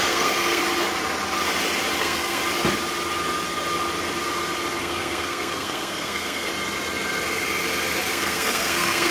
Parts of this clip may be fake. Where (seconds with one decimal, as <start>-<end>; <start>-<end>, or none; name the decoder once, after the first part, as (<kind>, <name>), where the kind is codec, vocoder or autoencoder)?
0.0-0.6 (codec, SNAC); 2.0-2.4; 4.8-6.5; 8.1-9.1